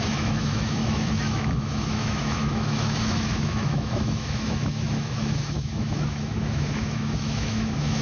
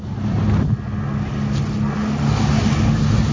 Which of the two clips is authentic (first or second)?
second